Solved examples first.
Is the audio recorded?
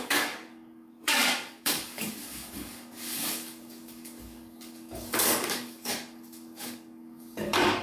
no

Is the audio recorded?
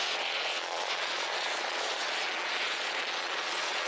no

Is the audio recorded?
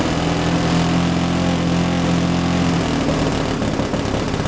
yes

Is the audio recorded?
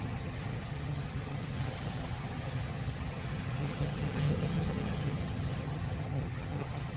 no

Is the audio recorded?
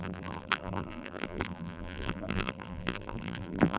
no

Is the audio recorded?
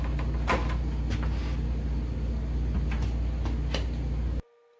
yes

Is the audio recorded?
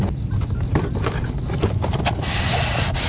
yes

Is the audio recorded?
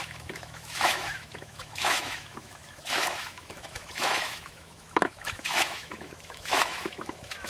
no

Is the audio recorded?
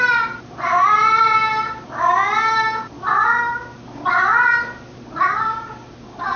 yes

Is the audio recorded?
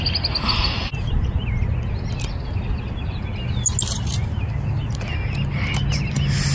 yes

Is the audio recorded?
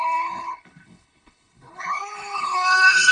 no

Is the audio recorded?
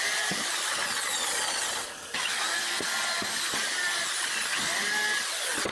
yes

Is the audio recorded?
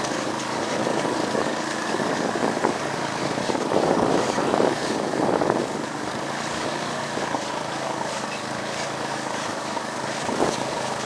no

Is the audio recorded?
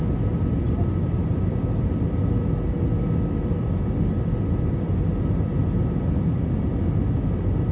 yes